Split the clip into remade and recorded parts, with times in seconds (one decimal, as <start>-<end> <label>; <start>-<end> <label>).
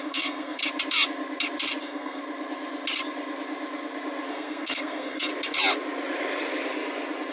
0.0-0.6 remade; 0.6-1.8 recorded; 1.8-2.2 remade; 2.2-4.3 recorded; 4.3-5.3 remade; 5.3-7.3 recorded